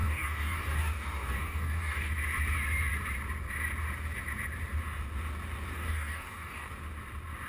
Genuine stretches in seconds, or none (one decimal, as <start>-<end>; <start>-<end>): 2.1-5.7; 6.7-7.5